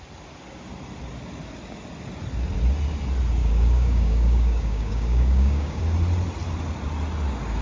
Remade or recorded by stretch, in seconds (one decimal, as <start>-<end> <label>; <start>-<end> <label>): 0.0-3.4 recorded; 3.4-5.8 remade; 5.8-7.6 recorded